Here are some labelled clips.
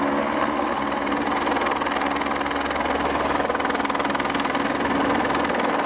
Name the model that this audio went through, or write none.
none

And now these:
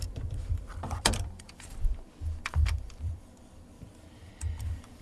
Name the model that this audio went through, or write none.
vocoder, BigVGAN v2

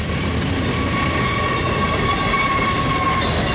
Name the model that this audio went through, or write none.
none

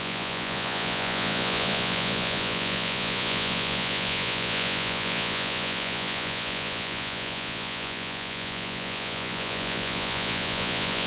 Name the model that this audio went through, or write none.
vocoder, Vocos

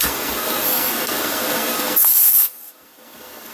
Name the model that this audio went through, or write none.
codec, SNAC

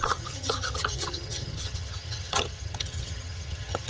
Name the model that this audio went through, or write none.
vocoder, HiFi-GAN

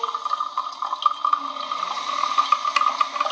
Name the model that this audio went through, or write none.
none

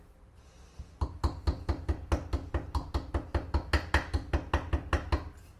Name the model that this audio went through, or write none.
none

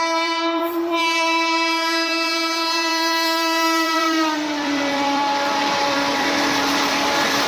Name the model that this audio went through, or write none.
vocoder, BigVGAN v2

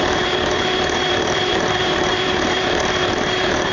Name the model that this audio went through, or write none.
vocoder, BigVGAN v2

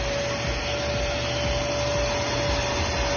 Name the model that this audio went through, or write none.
none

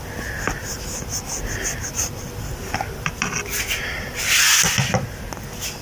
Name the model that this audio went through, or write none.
none